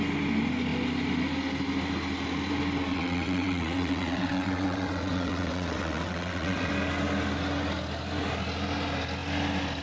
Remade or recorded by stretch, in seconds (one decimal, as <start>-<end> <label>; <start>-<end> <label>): 0.0-2.9 recorded; 2.9-6.7 remade; 6.7-9.8 recorded